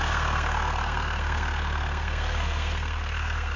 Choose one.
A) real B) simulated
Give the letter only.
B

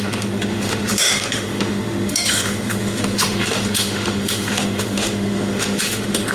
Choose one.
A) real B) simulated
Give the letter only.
B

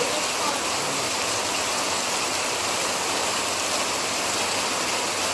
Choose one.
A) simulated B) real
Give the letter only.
B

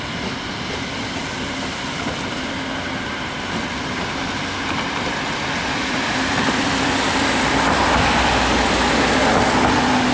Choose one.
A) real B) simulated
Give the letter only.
B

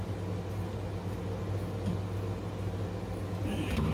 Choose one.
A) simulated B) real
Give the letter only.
B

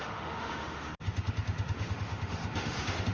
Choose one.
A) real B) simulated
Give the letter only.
B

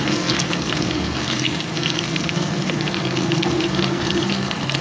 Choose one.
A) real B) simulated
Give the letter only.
B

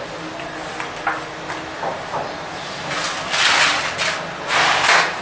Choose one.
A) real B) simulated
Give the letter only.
A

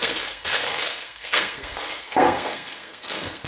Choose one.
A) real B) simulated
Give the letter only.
B